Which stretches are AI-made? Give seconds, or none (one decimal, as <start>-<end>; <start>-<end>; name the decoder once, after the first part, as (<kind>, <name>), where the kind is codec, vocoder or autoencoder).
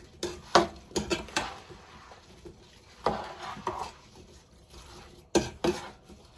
1.1-1.9 (vocoder, BigVGAN v2)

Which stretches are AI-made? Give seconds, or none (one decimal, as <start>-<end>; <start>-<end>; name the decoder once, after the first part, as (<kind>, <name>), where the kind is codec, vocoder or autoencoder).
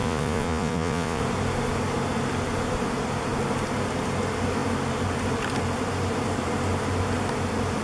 0.0-1.2 (vocoder, Vocos)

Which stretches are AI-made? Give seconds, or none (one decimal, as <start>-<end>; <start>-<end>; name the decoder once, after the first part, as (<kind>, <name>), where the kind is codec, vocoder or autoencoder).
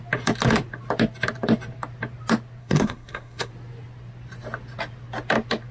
2.6-3.5 (codec, SNAC)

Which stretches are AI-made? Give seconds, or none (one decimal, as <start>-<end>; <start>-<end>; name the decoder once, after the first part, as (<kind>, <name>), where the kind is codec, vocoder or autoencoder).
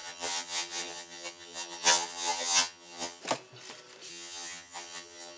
0.0-3.2 (vocoder, HiFi-GAN); 4.1-5.4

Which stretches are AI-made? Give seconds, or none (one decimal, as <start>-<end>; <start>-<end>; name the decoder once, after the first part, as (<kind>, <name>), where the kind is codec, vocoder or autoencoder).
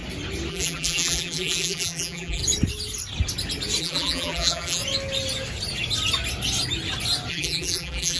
0.5-2.4 (vocoder, BigVGAN v2); 3.8-4.8; 7.3-8.2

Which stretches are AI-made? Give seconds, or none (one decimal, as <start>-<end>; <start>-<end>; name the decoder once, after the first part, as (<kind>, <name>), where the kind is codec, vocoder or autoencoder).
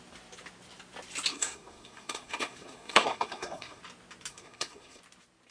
1.3-3.8 (codec, SNAC); 4.3-5.0